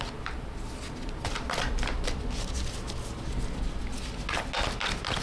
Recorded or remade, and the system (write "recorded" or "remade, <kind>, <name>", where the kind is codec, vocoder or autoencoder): recorded